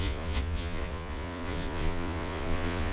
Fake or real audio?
fake